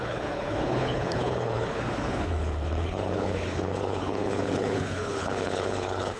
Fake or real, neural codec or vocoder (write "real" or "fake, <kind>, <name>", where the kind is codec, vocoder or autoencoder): fake, codec, HILCodec